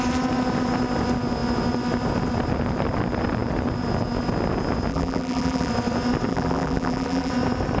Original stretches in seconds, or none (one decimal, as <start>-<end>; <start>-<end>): 0.0-4.9; 5.7-6.3; 7.3-7.8